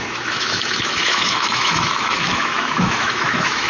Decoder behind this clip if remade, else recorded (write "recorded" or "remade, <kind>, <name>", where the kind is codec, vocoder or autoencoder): remade, autoencoder, DAC-VAE